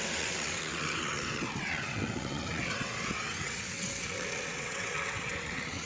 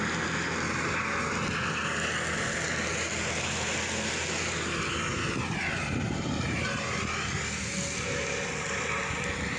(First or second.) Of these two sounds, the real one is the second